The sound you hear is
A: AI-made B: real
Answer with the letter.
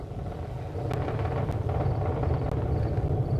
B